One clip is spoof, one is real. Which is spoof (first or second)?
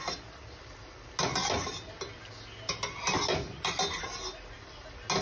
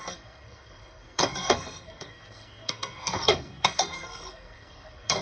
second